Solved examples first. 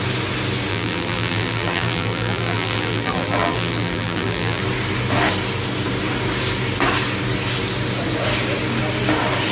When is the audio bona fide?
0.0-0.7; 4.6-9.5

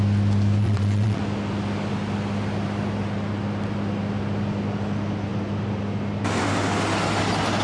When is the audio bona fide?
0.0-0.6; 1.2-7.6

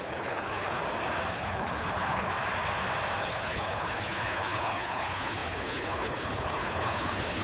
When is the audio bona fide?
0.8-1.3; 2.3-3.2

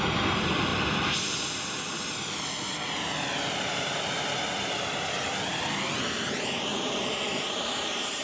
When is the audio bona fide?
0.0-6.7